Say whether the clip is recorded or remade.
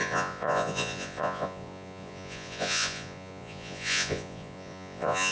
remade